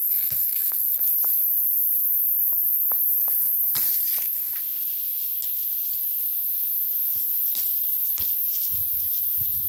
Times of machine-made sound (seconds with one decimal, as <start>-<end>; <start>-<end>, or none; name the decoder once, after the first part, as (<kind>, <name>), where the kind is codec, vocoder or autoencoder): 0.0-1.0 (codec, SNAC)